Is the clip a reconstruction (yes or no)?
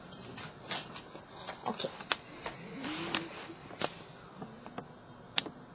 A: no